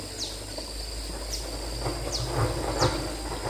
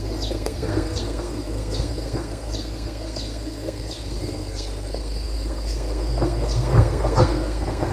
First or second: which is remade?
second